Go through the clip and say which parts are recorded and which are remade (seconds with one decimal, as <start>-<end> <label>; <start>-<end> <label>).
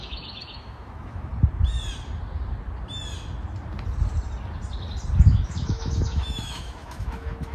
0.0-1.3 remade; 1.3-5.3 recorded; 5.3-7.5 remade